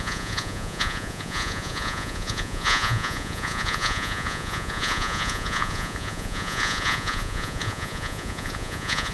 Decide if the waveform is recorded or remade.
remade